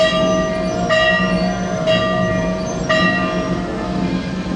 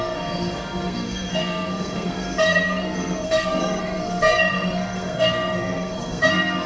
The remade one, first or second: second